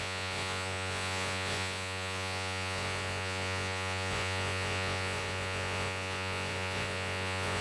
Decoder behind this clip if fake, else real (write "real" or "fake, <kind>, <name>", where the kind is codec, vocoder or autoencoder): fake, vocoder, Vocos